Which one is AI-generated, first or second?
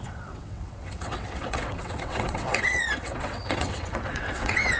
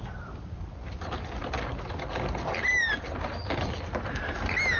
first